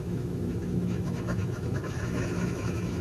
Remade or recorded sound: remade